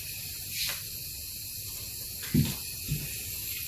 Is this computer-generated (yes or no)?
no